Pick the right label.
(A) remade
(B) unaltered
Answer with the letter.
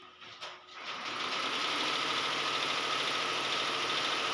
B